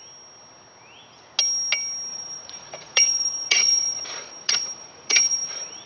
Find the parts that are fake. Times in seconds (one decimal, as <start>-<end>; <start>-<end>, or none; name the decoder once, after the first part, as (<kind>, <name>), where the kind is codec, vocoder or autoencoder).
2.1-5.9 (vocoder, Vocos)